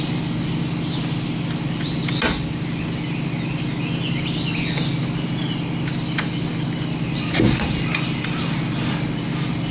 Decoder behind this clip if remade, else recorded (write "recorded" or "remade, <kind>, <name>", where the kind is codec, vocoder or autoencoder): recorded